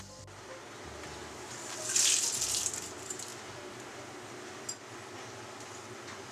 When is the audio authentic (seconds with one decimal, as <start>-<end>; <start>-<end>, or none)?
0.0-6.3